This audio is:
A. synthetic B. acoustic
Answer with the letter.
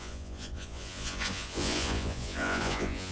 A